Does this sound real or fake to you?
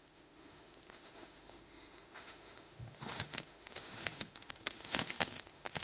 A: fake